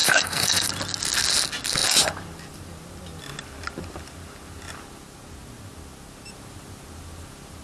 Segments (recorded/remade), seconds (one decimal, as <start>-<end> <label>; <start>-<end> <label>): 0.0-0.7 remade; 0.7-7.6 recorded